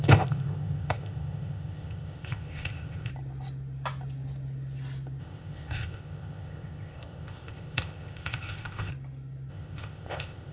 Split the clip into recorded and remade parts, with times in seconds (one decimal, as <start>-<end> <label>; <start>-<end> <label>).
0.0-3.1 remade; 3.1-5.2 recorded; 5.2-8.9 remade; 8.9-9.5 recorded; 9.5-10.5 remade

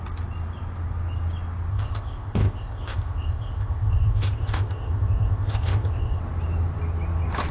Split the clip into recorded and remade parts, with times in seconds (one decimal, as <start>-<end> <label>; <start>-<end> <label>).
0.0-1.7 recorded; 1.7-6.2 remade; 6.2-7.5 recorded

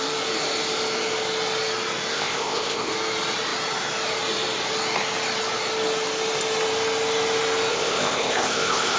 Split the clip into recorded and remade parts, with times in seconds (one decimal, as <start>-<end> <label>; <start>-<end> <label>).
0.0-2.1 recorded; 2.1-2.9 remade; 2.9-7.7 recorded; 7.7-9.0 remade

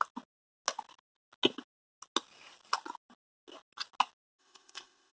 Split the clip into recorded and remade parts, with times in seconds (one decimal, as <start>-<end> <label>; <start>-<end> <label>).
0.0-4.4 recorded; 4.4-5.1 remade

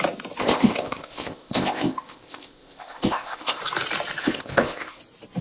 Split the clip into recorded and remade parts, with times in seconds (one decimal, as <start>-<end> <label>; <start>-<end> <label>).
0.0-0.4 recorded; 0.4-3.6 remade; 3.6-4.2 recorded; 4.2-5.0 remade; 5.0-5.4 recorded

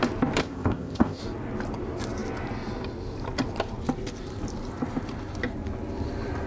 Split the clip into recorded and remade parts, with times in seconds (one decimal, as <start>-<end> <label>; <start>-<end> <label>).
0.0-0.4 recorded; 0.4-1.2 remade; 1.2-6.5 recorded